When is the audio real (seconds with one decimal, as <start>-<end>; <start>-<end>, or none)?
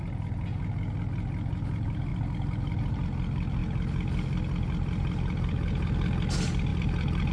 0.0-7.3